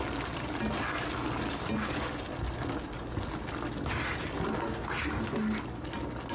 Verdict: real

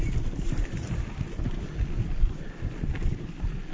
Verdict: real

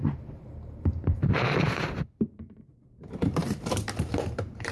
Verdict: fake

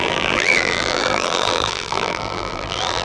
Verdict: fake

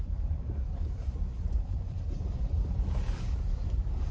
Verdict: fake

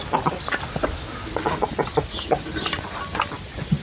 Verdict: real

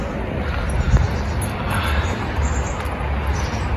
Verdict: real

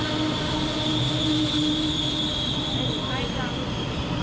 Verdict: real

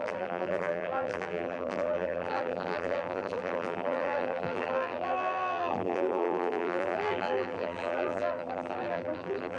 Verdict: fake